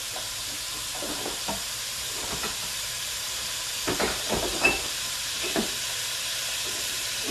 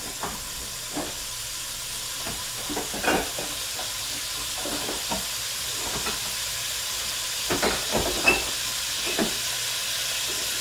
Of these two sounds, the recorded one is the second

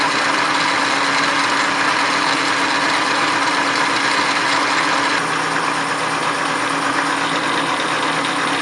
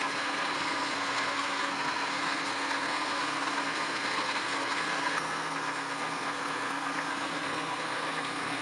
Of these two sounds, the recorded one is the first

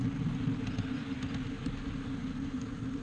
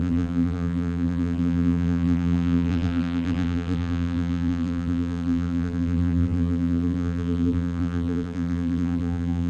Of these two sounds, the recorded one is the first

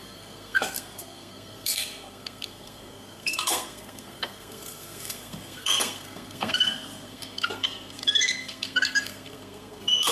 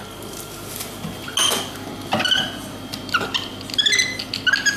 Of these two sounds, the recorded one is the second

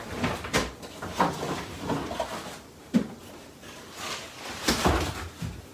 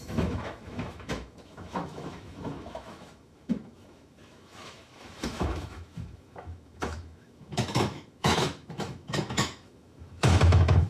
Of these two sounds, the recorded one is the first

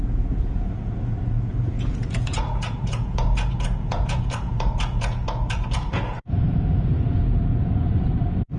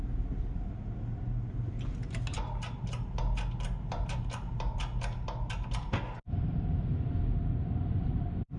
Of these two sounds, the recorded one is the second